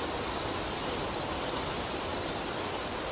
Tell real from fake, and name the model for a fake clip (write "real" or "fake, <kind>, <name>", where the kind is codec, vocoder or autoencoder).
real